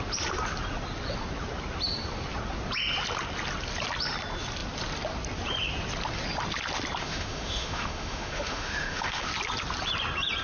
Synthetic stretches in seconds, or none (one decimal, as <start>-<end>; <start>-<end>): 7.0-9.3